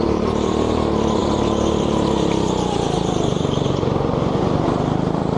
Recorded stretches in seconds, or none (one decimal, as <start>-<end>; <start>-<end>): none